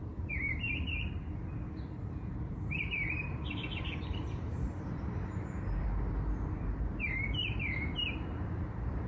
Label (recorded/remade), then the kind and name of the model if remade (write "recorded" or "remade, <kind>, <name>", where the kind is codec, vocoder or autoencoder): remade, vocoder, BigVGAN v2